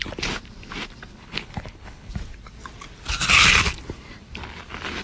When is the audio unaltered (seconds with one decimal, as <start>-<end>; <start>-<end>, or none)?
0.0-1.1; 2.1-5.0